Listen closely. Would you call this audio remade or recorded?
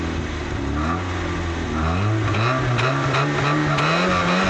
recorded